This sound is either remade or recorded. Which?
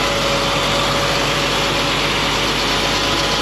recorded